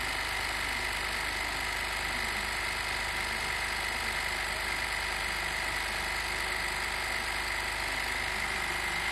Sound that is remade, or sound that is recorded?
recorded